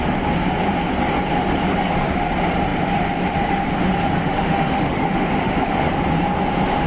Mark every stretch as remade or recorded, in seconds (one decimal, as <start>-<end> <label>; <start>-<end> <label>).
0.0-4.2 recorded; 4.2-5.9 remade; 5.9-6.9 recorded